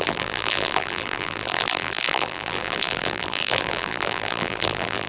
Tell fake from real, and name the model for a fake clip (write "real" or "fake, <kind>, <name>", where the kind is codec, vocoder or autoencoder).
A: fake, vocoder, BigVGAN v2